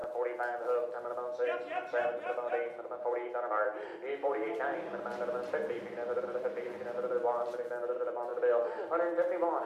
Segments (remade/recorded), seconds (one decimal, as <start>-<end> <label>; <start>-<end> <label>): 0.0-3.5 recorded; 3.5-5.1 remade; 5.1-5.7 recorded; 5.7-8.3 remade; 8.3-9.7 recorded